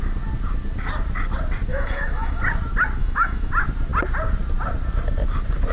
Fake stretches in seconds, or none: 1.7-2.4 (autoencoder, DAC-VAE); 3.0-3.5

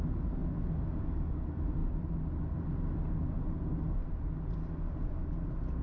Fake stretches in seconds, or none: none

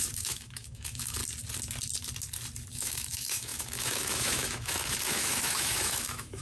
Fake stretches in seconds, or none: 0.0-1.2 (autoencoder, DAC-VAE); 2.7-6.4

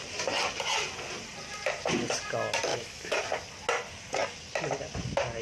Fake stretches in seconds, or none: 2.7-3.2 (autoencoder, DAC-VAE)

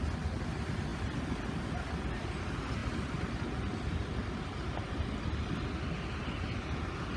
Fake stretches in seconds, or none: none